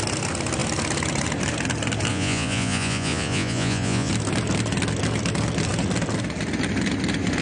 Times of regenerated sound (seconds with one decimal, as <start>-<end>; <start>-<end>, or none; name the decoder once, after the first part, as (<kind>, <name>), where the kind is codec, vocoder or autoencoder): 2.1-4.1 (vocoder, Vocos)